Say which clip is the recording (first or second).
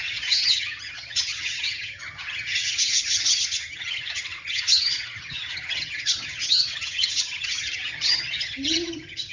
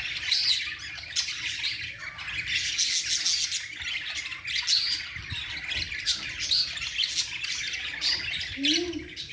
second